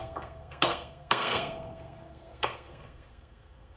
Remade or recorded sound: remade